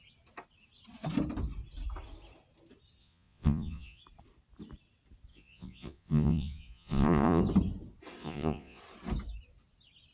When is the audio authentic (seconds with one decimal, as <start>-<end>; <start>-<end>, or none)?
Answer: 0.0-3.0; 4.0-5.3; 7.4-8.2; 8.8-10.1